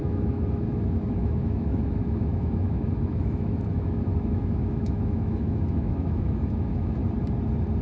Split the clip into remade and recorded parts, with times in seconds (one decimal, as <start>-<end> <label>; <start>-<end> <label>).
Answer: 0.0-7.0 remade; 7.0-7.8 recorded